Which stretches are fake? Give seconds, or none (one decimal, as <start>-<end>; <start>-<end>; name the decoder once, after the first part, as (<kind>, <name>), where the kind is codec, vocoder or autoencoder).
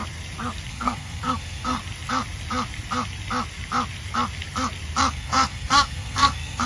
0.7-1.8 (codec, SNAC); 5.1-6.7